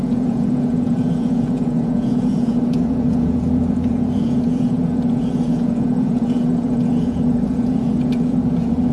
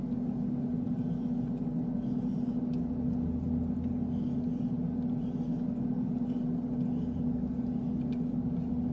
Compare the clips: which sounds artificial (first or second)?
first